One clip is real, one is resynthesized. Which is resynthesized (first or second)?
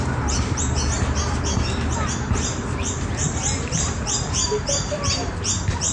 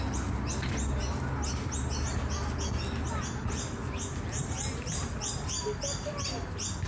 first